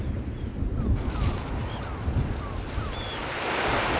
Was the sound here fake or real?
fake